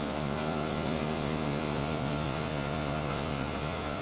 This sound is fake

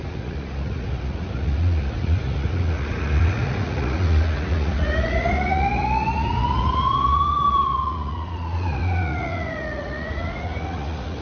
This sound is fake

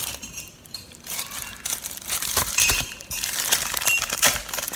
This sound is fake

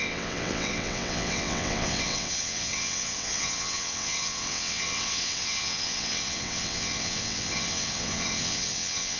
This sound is fake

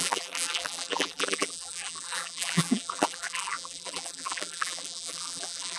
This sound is fake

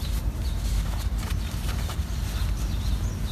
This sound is real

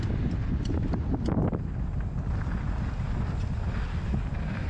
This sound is real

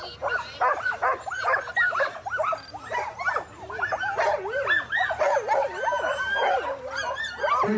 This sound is real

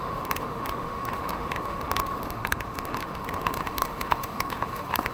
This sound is fake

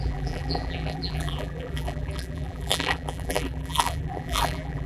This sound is fake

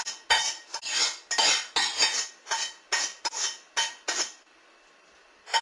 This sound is real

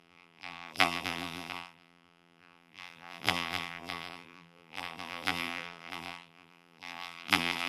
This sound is fake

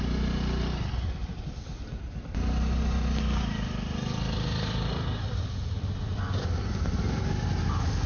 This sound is real